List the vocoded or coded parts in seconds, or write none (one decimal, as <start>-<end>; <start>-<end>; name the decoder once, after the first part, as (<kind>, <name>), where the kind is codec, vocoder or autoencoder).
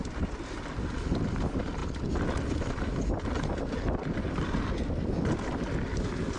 none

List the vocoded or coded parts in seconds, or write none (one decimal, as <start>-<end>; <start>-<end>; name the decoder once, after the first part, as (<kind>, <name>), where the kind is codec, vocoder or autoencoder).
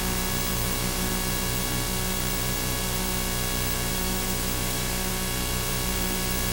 0.5-1.1 (autoencoder, DAC-VAE); 3.9-5.1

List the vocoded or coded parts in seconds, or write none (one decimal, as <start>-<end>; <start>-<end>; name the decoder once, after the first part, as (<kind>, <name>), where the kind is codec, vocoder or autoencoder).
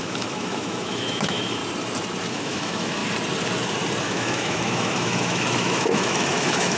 0.0-1.6 (autoencoder, DAC-VAE); 2.3-3.0; 4.0-6.8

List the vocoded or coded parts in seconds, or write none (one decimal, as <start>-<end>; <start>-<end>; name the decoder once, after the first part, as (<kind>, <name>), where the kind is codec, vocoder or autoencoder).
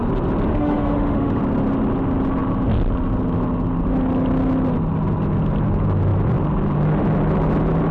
0.5-1.4 (autoencoder, DAC-VAE)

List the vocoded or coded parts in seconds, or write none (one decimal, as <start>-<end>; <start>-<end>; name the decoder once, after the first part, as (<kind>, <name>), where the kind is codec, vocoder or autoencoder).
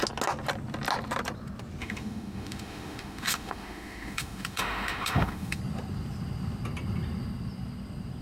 1.8-5.6 (autoencoder, DAC-VAE)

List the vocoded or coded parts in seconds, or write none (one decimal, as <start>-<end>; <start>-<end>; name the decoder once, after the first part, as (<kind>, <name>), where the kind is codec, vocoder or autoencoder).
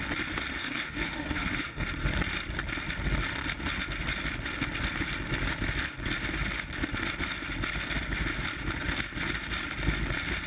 0.6-1.9 (autoencoder, DAC-VAE)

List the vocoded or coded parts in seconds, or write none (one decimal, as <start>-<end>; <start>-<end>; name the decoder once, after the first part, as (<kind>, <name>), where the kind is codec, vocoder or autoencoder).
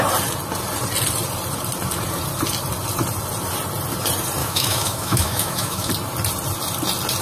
4.4-5.9 (autoencoder, DAC-VAE)